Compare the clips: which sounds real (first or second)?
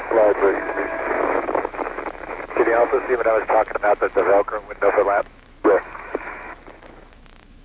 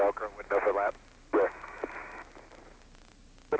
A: second